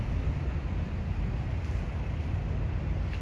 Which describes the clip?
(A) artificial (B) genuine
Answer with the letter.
B